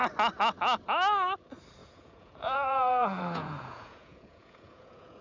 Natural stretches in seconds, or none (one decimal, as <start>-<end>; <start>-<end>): 0.0-1.8